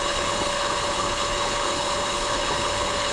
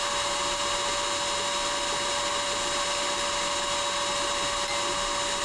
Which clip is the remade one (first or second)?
first